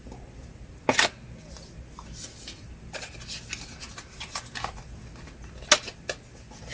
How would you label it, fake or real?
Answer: real